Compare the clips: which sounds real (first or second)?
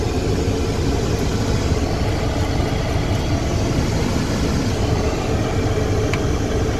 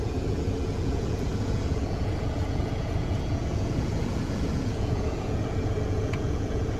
first